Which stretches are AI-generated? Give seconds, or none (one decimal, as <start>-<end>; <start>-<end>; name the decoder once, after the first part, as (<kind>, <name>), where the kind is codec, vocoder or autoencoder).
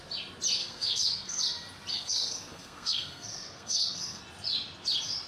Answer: 0.6-1.4 (codec, SNAC); 1.9-4.2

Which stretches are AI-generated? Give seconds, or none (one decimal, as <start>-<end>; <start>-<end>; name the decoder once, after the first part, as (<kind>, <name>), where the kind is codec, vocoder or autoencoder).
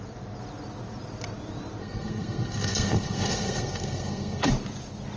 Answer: 1.8-4.5 (codec, SNAC)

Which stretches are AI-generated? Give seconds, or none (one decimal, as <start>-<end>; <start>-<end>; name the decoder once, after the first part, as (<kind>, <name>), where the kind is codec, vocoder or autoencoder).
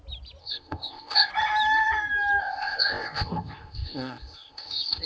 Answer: 0.4-1.3 (codec, ZipCodec); 2.4-5.1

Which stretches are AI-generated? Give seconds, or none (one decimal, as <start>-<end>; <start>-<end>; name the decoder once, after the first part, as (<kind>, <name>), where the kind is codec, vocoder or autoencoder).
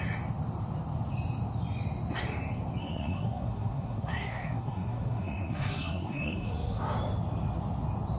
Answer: 2.8-6.8 (codec, SNAC)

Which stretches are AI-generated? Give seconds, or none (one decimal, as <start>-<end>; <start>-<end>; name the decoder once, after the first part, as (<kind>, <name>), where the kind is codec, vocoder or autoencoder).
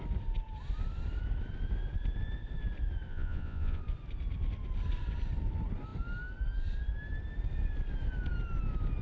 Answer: 3.1-3.8 (vocoder, Vocos)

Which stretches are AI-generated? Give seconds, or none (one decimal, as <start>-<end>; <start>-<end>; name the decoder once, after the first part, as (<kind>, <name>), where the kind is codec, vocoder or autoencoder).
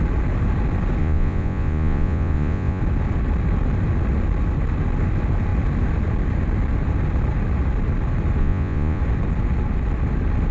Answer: 1.0-2.8 (vocoder, Vocos); 8.4-9.0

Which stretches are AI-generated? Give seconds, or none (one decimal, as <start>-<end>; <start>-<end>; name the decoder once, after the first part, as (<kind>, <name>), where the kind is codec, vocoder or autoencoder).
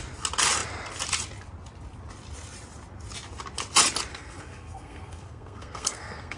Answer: 4.1-6.4 (codec, SNAC)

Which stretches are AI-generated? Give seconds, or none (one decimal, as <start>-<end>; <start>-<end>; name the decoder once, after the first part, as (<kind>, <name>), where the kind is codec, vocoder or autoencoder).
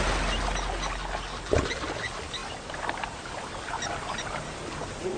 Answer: none